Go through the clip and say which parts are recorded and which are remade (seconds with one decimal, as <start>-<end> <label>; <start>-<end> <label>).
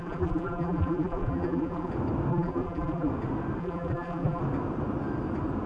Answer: 0.0-1.9 remade; 1.9-2.3 recorded; 2.3-3.1 remade; 3.1-3.6 recorded; 3.6-4.4 remade; 4.4-5.7 recorded